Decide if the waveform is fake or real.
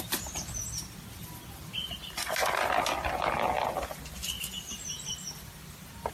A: real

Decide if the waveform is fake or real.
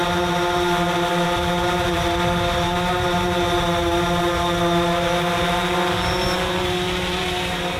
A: fake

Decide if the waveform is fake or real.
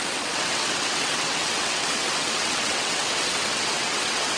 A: fake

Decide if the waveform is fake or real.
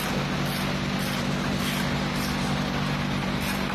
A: real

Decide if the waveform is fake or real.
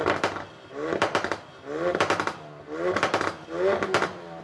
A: real